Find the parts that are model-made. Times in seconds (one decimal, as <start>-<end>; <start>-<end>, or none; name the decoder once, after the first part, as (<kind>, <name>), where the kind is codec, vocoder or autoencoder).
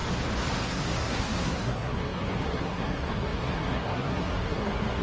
0.5-5.0 (codec, SNAC)